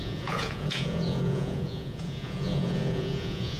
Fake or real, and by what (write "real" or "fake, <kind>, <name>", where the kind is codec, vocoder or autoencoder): fake, vocoder, Vocos